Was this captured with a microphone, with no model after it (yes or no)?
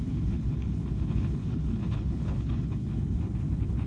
no